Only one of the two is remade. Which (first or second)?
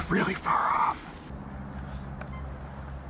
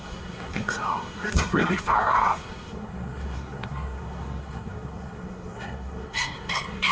second